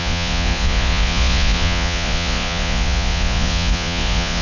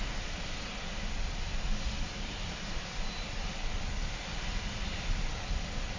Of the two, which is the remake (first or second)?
first